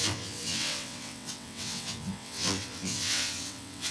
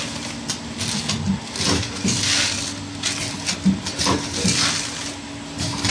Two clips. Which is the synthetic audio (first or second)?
first